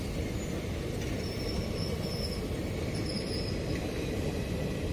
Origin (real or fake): real